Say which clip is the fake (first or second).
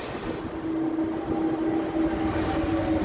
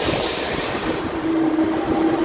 second